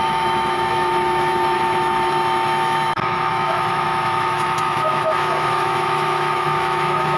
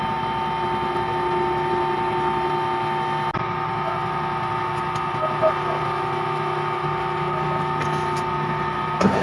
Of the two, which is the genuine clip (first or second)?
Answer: second